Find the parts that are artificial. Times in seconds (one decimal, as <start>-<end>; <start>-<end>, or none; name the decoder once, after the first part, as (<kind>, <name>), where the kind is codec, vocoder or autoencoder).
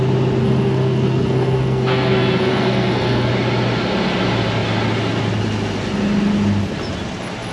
0.4-3.3 (codec, SNAC)